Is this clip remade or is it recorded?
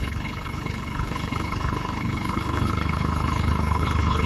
remade